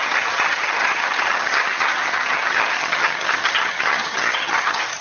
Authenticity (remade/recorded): remade